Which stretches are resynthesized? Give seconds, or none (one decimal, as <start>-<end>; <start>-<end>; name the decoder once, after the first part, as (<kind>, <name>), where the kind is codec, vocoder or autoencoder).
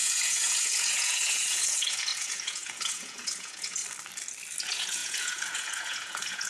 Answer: 0.0-3.8 (vocoder, Vocos); 4.6-6.5